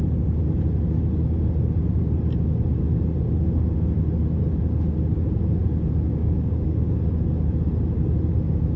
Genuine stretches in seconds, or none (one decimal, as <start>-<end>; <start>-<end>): 0.0-6.1; 6.9-8.8